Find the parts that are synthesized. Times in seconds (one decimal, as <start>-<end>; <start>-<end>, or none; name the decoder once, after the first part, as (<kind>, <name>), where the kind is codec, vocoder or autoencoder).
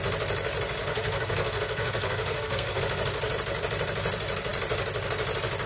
0.8-2.8 (codec, SNAC)